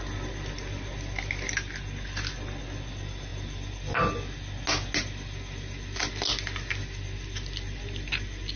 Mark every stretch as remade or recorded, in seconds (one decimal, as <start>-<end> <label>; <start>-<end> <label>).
0.0-8.6 recorded